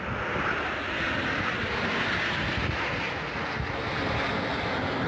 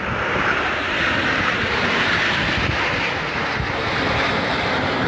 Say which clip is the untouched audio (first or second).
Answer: first